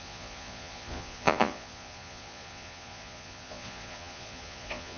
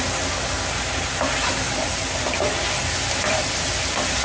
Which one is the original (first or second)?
second